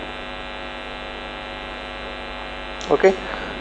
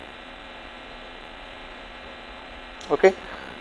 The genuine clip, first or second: first